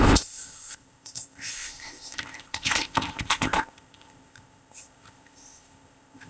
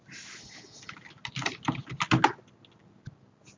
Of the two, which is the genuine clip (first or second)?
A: second